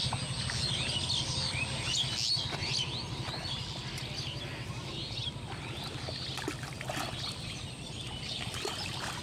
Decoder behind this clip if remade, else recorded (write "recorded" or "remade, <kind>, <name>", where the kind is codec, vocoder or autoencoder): recorded